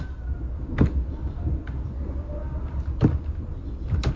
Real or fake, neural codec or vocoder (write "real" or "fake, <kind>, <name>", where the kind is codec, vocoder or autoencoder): real